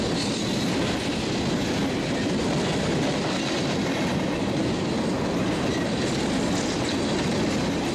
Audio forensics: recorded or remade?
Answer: recorded